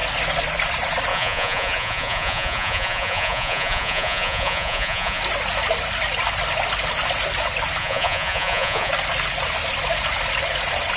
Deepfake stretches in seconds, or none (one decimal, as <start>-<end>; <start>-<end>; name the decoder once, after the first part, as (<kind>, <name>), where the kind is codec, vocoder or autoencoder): 1.1-5.2 (vocoder, Vocos); 7.8-8.9

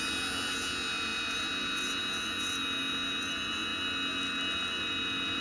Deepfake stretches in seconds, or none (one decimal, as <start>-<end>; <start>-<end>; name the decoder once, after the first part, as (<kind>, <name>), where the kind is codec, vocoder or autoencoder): none

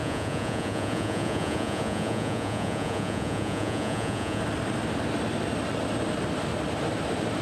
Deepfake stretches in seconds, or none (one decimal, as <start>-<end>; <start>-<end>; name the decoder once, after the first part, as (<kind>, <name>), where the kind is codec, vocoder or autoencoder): 0.0-4.4 (vocoder, Vocos)